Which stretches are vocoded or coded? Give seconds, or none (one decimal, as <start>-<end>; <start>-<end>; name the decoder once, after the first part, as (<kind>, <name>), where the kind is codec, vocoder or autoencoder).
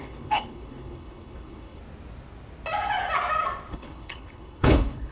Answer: 0.0-1.8 (codec, HILCodec); 3.7-5.1